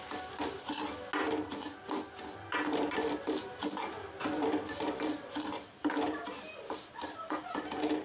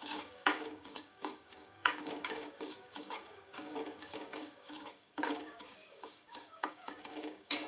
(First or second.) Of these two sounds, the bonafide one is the first